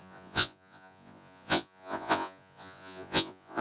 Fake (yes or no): yes